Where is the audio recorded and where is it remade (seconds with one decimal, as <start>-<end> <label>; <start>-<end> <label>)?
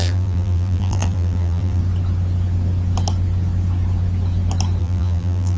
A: 0.0-1.8 remade; 1.8-4.8 recorded; 4.8-5.6 remade